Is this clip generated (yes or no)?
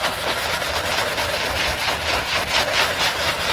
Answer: no